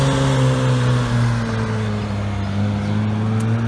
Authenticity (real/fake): real